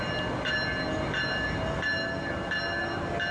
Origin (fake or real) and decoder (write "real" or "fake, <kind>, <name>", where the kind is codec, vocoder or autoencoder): real